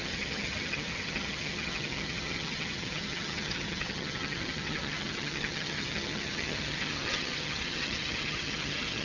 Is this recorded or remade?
remade